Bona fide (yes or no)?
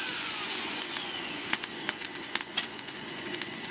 no